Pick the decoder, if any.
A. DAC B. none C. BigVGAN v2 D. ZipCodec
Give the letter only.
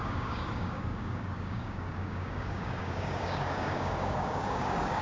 A